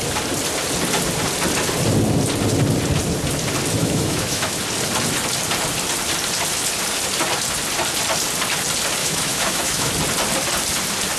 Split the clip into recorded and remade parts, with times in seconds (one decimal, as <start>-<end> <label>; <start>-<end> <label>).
0.0-3.8 recorded; 3.8-4.6 remade; 4.6-9.0 recorded; 9.0-9.9 remade; 9.9-11.2 recorded